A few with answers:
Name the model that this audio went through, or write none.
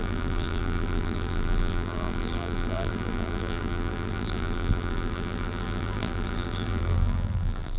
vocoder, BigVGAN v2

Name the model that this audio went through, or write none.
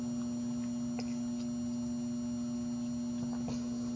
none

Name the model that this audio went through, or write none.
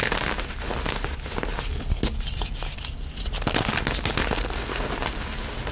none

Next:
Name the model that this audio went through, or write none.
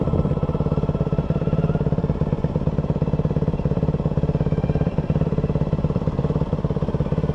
vocoder, BigVGAN v2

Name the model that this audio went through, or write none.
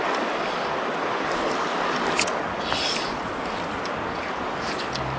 none